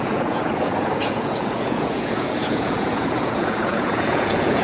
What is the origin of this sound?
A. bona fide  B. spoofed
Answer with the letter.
B